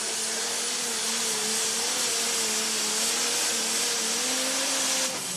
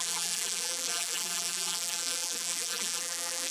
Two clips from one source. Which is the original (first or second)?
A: first